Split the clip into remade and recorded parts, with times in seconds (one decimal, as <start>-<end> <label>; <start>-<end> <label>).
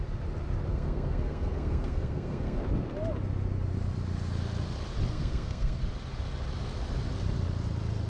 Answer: 0.0-0.7 recorded; 0.7-2.6 remade; 2.6-5.1 recorded; 5.1-5.8 remade; 5.8-8.1 recorded